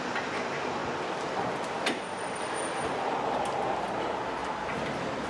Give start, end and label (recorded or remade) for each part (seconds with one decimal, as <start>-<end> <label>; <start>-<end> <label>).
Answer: 0.0-0.8 remade; 0.8-4.0 recorded; 4.0-4.4 remade; 4.4-5.3 recorded